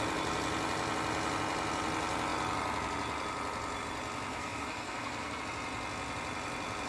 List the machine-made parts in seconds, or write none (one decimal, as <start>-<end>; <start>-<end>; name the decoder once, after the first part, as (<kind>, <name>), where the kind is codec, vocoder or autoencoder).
4.3-5.4 (codec, SNAC)